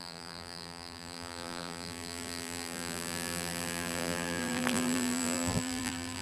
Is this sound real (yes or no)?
no